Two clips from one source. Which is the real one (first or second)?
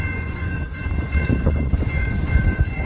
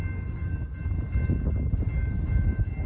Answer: second